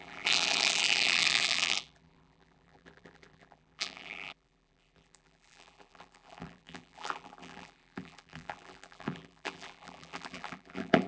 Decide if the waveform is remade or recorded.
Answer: remade